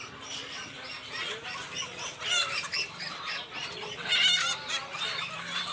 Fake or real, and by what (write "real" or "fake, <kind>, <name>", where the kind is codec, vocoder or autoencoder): real